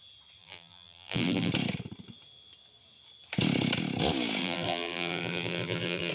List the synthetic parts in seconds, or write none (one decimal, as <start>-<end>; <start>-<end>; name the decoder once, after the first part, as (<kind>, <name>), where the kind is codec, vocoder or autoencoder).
0.4-1.5 (vocoder, BigVGAN v2); 4.4-6.1